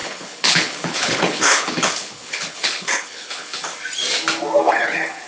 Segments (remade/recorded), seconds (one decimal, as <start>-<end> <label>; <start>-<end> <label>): 0.0-3.7 remade; 3.7-4.7 recorded; 4.7-5.3 remade